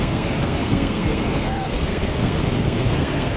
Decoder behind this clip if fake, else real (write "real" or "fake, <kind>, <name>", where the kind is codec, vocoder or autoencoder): fake, codec, SNAC